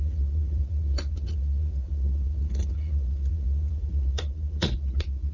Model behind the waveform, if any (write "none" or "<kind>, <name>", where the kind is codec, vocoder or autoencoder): vocoder, Vocos